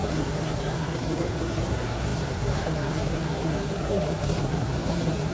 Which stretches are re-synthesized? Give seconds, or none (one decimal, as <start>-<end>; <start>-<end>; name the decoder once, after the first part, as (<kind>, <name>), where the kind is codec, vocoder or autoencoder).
0.0-5.3 (codec, SNAC)